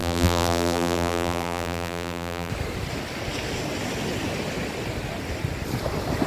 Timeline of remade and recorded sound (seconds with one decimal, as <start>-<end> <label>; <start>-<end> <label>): 0.0-2.5 remade; 2.5-6.3 recorded